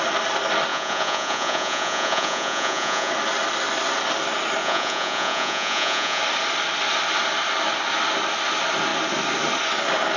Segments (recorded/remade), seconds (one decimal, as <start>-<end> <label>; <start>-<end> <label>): 0.0-0.7 recorded; 0.7-3.1 remade; 3.1-4.6 recorded; 4.6-6.2 remade; 6.2-10.2 recorded